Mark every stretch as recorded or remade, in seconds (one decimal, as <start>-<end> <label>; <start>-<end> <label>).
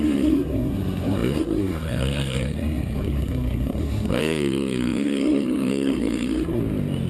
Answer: 0.0-6.6 remade; 6.6-7.1 recorded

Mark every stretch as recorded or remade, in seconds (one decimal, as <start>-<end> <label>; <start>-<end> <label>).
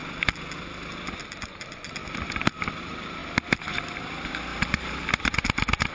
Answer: 0.0-1.2 recorded; 1.2-2.0 remade; 2.0-2.8 recorded; 2.8-3.2 remade; 3.2-3.8 recorded; 3.8-5.9 remade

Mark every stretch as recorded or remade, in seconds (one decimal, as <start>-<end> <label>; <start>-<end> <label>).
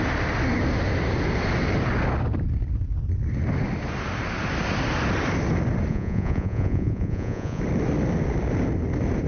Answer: 0.0-5.9 recorded; 5.9-7.6 remade; 7.6-9.3 recorded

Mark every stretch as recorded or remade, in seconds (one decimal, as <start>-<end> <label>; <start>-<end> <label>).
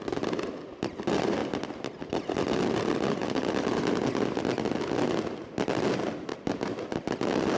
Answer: 0.0-7.6 recorded